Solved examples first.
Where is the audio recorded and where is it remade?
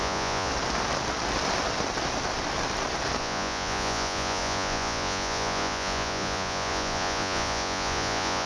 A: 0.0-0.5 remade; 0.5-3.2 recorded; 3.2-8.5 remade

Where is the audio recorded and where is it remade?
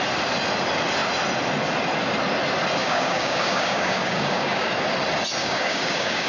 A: 0.0-2.8 recorded; 2.8-4.7 remade; 4.7-5.4 recorded; 5.4-6.3 remade